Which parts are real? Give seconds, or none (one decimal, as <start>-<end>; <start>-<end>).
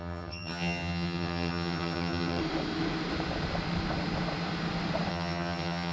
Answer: 2.4-5.1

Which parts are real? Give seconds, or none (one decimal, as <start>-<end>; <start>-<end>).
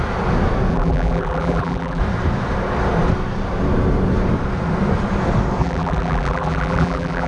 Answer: 0.0-0.7; 2.0-5.6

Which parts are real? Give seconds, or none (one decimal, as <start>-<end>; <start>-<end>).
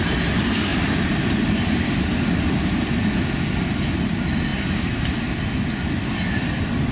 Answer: 0.0-0.7; 1.9-4.5; 5.3-6.9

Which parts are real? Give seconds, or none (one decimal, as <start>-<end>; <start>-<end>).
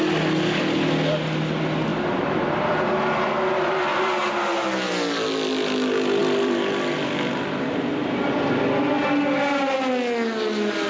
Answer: 0.0-1.9; 4.3-6.2; 8.6-10.9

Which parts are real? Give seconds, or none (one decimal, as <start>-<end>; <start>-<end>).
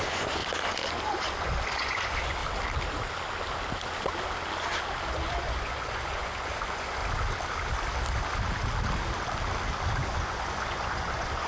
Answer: 0.4-1.0; 2.4-5.1; 7.0-10.0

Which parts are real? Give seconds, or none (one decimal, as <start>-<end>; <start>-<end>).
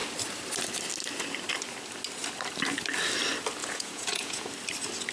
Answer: 0.0-3.6; 4.5-5.1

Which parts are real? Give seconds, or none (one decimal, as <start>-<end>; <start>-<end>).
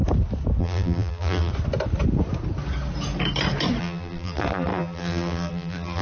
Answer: 0.0-0.6; 1.5-3.8